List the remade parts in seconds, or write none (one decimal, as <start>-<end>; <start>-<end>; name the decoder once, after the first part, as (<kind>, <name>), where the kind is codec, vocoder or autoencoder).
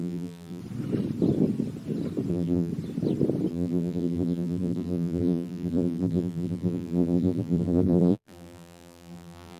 0.0-0.6 (vocoder, BigVGAN v2); 2.3-2.7; 3.5-9.6